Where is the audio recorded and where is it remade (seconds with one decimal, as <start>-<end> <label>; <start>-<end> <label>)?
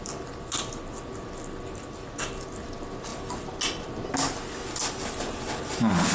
0.0-6.1 recorded